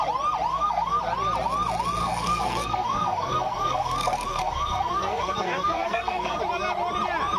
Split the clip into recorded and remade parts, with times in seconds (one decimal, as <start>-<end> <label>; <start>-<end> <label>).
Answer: 0.0-0.5 recorded; 0.5-1.0 remade; 1.0-2.0 recorded; 2.0-6.4 remade; 6.4-7.4 recorded